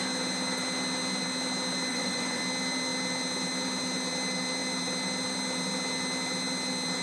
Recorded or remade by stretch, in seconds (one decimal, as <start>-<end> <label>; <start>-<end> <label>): 0.0-1.9 recorded; 1.9-2.4 remade; 2.4-7.0 recorded